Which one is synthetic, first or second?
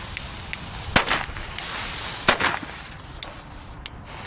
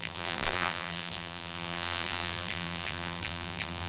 second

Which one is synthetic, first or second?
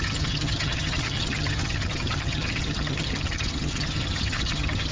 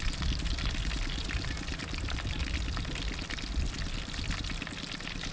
first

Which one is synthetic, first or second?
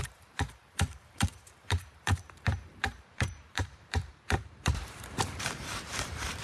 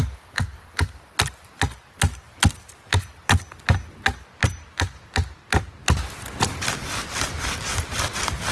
first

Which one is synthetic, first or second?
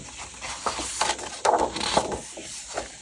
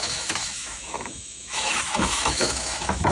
second